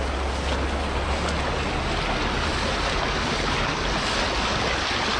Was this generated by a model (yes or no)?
no